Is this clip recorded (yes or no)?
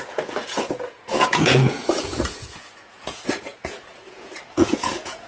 no